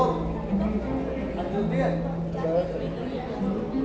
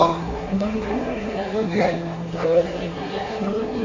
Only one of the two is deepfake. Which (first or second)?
second